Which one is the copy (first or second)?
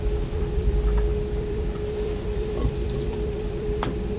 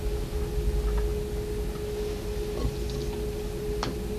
first